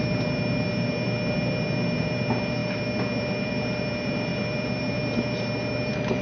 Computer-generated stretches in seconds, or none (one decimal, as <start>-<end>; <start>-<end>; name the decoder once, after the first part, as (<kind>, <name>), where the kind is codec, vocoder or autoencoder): 0.0-6.2 (vocoder, BigVGAN v2)